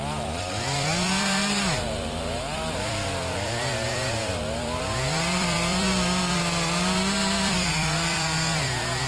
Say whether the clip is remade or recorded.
remade